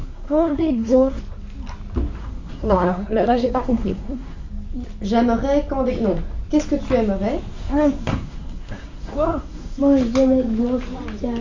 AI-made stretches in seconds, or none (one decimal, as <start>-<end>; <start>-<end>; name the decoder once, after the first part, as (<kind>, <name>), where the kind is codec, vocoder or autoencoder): 0.0-1.2 (codec, SNAC); 2.2-4.5; 7.5-9.8